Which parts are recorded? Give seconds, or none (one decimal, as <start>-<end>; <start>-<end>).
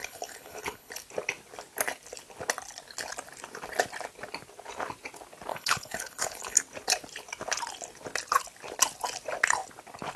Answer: 0.9-5.5; 6.6-10.2